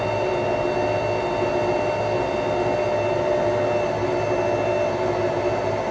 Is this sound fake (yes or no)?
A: no